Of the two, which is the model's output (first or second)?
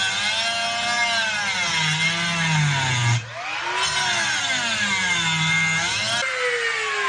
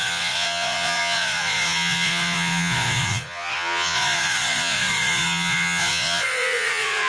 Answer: second